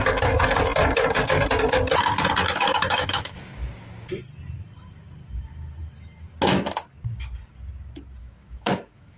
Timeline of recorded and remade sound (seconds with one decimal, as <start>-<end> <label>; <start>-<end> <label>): 0.0-2.7 recorded; 2.7-3.5 remade; 3.5-8.2 recorded; 8.2-9.2 remade